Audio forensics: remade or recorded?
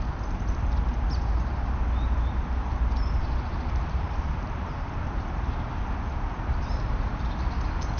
remade